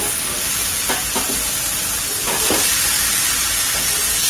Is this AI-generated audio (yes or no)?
no